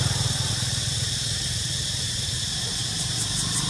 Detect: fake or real fake